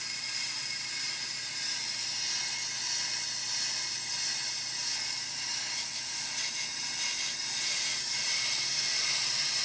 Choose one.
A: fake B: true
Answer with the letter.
B